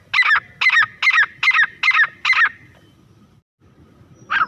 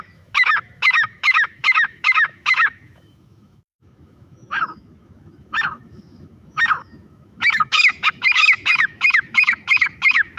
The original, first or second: first